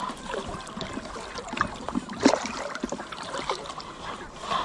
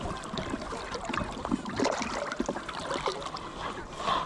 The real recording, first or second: second